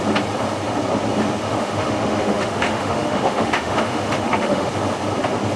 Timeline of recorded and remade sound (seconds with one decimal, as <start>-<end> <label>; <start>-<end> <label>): 0.0-1.4 recorded; 1.4-4.7 remade; 4.7-5.6 recorded